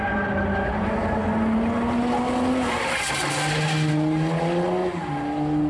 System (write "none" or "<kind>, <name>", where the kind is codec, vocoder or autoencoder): none